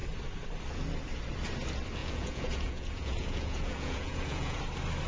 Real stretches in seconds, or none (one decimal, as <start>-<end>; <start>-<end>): 0.0-2.0; 4.6-5.1